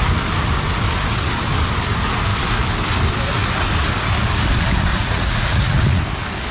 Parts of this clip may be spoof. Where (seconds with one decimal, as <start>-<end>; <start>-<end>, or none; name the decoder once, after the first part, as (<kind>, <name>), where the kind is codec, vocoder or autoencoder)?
4.9-6.0 (vocoder, Vocos)